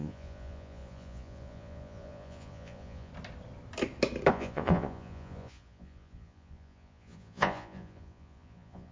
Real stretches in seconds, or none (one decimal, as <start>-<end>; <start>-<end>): 3.1-4.3